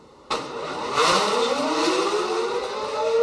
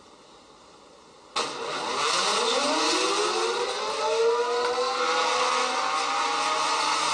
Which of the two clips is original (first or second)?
second